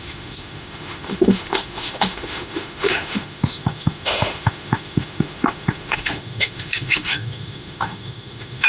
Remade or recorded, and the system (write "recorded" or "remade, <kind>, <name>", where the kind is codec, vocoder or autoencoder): remade, autoencoder, DAC-VAE